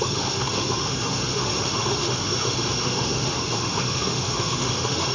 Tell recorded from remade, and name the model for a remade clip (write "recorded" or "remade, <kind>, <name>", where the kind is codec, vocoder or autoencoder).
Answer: remade, autoencoder, DAC-VAE